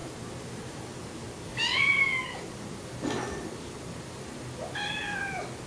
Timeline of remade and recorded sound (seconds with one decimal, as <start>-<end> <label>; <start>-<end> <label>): 0.0-1.5 recorded; 1.5-2.4 remade; 2.4-5.7 recorded